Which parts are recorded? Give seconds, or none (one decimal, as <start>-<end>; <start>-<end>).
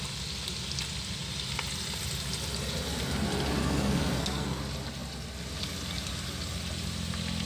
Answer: 0.0-3.6; 4.6-7.5